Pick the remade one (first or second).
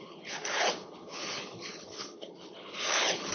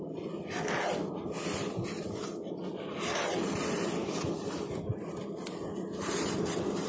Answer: first